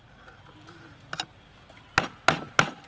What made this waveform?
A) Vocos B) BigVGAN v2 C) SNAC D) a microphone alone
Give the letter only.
D